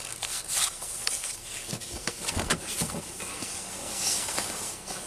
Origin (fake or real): fake